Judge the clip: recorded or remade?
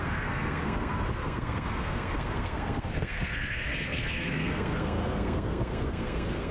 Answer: remade